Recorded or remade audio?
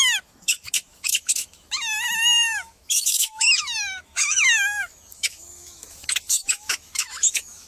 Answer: remade